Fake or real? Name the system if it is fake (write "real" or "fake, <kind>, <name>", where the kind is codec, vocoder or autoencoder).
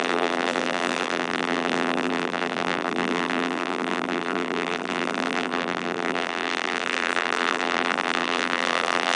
fake, vocoder, BigVGAN v2